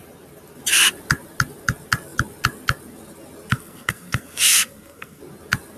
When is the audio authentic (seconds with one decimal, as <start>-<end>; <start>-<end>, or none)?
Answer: 0.0-3.5; 5.2-5.8